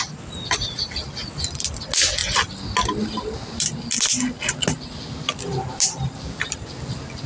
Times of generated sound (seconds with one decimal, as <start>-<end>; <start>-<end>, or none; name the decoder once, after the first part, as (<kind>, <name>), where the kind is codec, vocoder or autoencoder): none